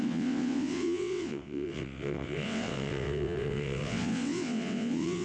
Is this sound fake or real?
fake